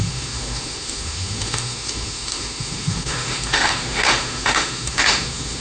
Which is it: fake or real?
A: fake